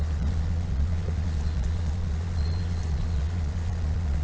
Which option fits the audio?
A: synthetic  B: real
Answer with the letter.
A